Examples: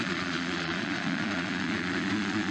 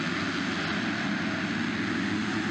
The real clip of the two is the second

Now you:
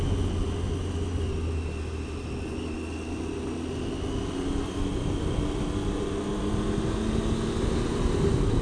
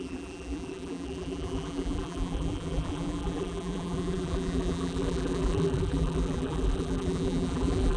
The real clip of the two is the first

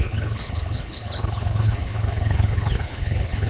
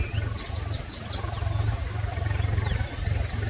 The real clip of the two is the second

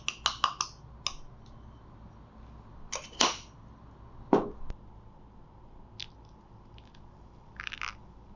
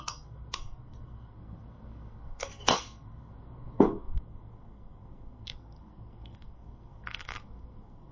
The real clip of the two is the first